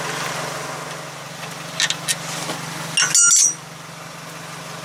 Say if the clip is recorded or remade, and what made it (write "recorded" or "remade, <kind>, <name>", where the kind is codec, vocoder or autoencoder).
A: recorded